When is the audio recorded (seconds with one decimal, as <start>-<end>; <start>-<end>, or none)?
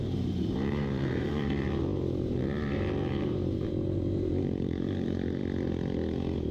5.4-6.5